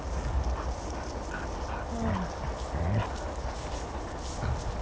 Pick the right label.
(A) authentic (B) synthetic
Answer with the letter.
A